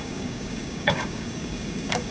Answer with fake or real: fake